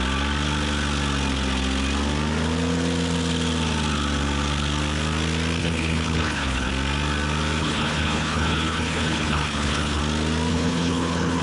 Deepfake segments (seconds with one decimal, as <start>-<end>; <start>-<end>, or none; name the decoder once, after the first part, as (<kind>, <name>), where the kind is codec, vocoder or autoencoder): 5.6-6.7 (codec, HILCodec); 7.6-10.0; 10.5-11.4